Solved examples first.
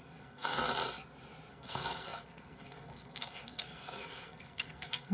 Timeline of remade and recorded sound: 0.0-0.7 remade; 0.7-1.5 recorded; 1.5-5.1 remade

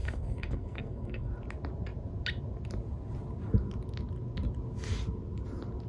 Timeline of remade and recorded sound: 0.0-1.3 remade; 1.3-5.9 recorded

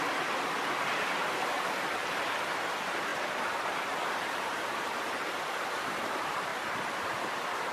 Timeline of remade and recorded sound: 0.0-7.7 recorded

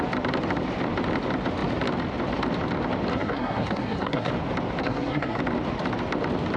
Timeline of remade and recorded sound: 0.0-3.1 recorded; 3.1-4.3 remade; 4.3-4.8 recorded; 4.8-5.4 remade; 5.4-6.6 recorded